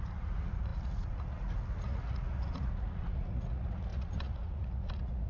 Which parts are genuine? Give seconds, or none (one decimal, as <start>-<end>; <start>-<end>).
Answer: none